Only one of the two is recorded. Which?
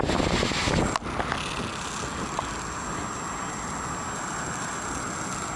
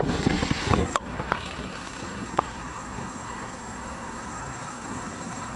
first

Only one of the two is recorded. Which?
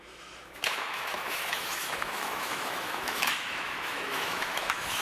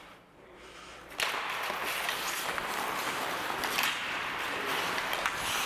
second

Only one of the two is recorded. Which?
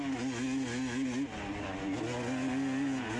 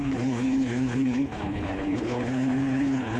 first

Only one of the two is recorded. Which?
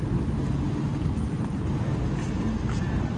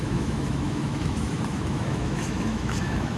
first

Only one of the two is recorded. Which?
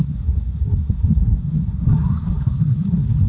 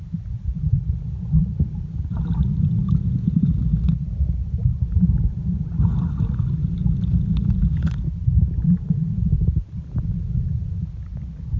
second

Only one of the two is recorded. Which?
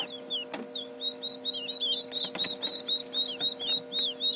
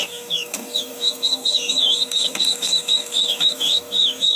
first